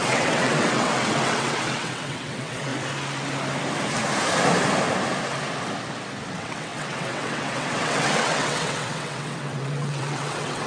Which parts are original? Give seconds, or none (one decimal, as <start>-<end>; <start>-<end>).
2.7-6.3